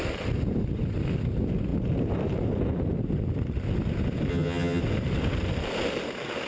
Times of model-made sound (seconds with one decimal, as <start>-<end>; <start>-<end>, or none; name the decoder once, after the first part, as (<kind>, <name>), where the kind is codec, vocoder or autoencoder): 4.3-4.8 (vocoder, HiFi-GAN)

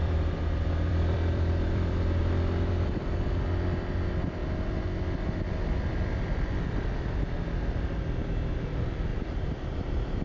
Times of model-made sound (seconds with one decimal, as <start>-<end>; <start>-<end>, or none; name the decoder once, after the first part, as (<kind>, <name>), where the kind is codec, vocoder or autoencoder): 0.0-2.2 (vocoder, BigVGAN v2); 9.1-10.2

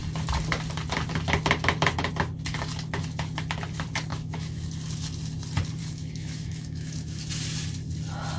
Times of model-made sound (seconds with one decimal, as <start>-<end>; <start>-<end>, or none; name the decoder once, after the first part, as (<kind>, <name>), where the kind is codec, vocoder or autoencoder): 4.1-4.7 (autoencoder, DAC-VAE); 5.8-7.2

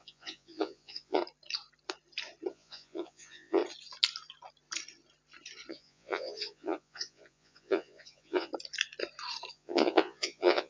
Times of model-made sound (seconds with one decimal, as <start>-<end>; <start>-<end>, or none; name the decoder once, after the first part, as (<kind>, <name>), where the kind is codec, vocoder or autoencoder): 0.0-1.2 (vocoder, Vocos); 2.5-3.6; 5.7-8.5; 9.5-10.7

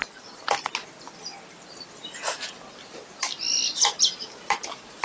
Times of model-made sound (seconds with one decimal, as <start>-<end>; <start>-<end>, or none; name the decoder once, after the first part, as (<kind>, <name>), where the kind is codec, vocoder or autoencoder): none

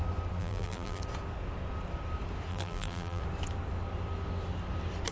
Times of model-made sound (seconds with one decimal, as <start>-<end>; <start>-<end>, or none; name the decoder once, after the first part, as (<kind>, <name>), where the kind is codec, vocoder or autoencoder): 0.4-1.0 (vocoder, BigVGAN v2); 2.5-3.2

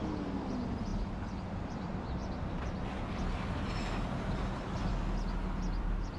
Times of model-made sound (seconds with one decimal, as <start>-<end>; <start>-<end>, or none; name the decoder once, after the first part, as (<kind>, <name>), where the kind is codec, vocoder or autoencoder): 0.0-2.2 (vocoder, BigVGAN v2); 4.3-4.9; 5.8-6.2

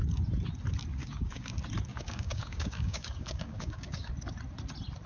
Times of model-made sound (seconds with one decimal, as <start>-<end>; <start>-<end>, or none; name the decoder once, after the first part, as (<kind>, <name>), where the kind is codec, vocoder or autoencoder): 1.0-1.5 (codec, DAC); 1.9-4.1